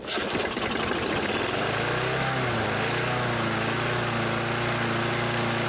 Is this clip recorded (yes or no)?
yes